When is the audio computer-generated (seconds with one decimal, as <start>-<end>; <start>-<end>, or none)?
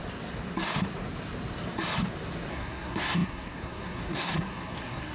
2.5-5.1